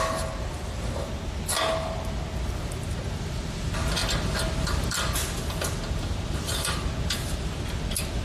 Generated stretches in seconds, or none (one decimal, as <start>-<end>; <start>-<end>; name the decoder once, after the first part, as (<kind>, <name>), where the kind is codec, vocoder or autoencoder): none

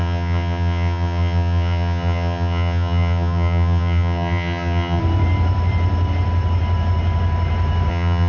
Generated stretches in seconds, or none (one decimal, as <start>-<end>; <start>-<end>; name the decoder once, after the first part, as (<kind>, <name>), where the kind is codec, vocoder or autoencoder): 0.0-5.0 (vocoder, HiFi-GAN); 7.9-8.3